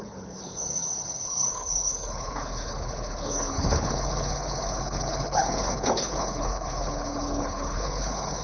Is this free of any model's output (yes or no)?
no